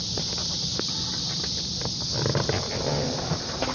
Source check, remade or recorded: recorded